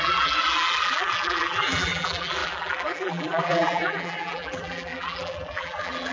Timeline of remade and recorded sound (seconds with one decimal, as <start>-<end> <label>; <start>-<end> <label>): 0.0-6.1 remade